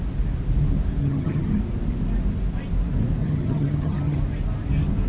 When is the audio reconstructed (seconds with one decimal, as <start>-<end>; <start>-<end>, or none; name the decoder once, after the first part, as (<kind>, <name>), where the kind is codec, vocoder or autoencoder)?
1.0-1.6 (vocoder, HiFi-GAN); 3.2-4.2